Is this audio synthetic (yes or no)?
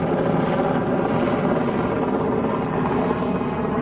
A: no